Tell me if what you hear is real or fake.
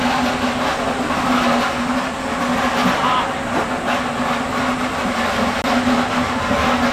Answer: real